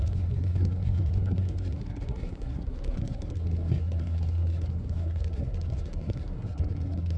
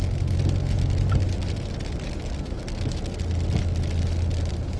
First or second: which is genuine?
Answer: second